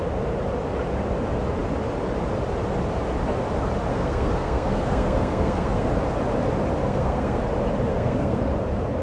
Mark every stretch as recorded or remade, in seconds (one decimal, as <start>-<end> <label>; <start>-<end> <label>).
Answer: 0.0-3.9 recorded; 3.9-5.9 remade; 5.9-6.8 recorded; 6.8-7.4 remade; 7.4-7.9 recorded; 7.9-8.4 remade; 8.4-9.0 recorded